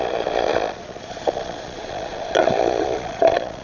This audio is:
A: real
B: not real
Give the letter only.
B